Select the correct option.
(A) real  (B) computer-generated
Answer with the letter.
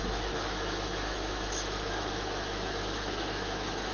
B